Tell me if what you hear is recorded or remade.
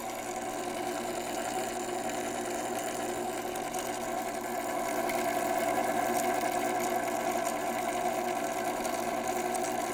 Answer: recorded